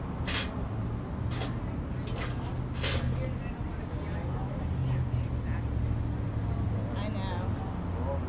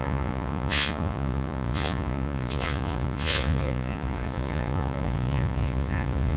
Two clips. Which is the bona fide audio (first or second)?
first